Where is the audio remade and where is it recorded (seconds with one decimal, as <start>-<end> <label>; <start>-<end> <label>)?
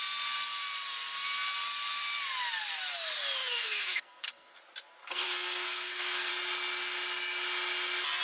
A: 0.0-3.4 recorded; 3.4-4.6 remade; 4.6-5.0 recorded; 5.0-6.3 remade; 6.3-8.2 recorded